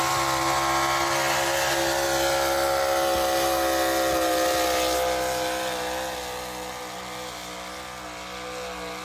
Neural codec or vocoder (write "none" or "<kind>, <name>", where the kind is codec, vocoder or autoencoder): none